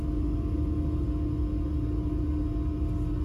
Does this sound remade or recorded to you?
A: recorded